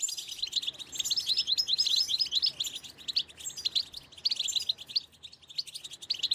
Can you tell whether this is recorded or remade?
recorded